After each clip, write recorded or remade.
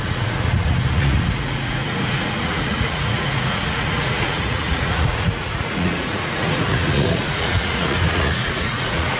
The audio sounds remade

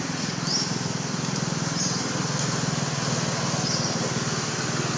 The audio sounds recorded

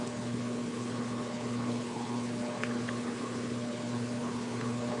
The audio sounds remade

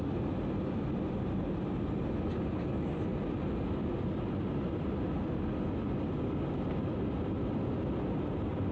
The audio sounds recorded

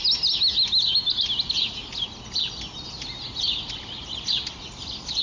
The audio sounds recorded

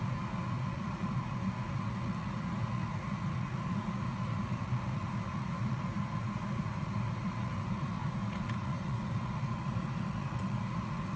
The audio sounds remade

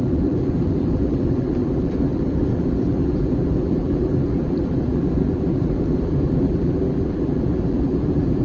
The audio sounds remade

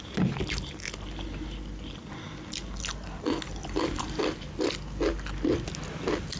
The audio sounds recorded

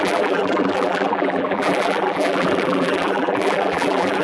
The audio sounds remade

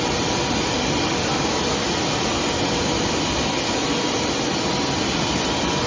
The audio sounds recorded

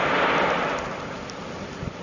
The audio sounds recorded